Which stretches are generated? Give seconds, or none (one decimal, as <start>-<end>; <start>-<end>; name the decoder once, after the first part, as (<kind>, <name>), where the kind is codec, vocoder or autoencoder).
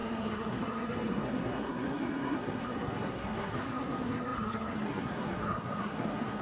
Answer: 0.0-6.4 (codec, SNAC)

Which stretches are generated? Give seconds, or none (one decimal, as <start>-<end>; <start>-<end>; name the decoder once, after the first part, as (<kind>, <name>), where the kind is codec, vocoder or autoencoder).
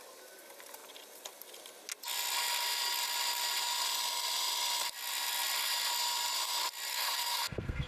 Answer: 6.9-7.9 (codec, SNAC)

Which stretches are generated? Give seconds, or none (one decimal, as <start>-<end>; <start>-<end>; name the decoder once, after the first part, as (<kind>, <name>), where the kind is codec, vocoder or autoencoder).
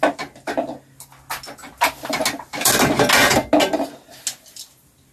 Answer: none